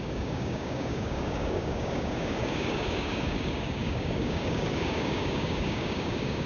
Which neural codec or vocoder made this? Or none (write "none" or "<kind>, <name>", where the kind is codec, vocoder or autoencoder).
codec, DAC